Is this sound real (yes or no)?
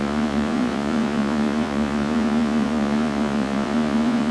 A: no